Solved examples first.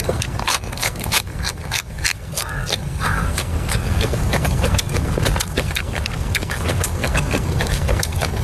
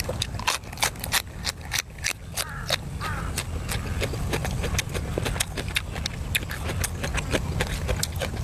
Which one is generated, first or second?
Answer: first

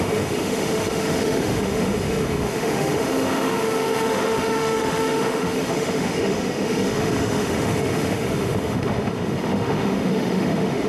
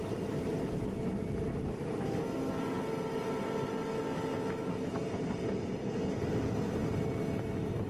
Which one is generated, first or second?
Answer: first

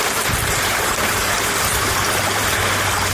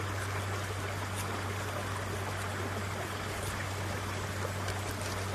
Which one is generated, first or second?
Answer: first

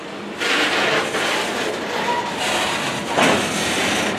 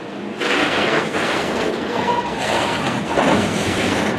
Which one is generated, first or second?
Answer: second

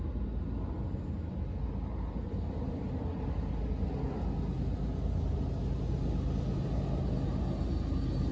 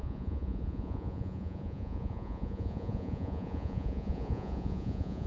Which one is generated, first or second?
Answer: second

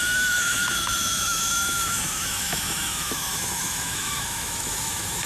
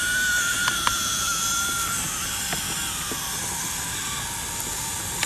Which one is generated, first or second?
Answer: first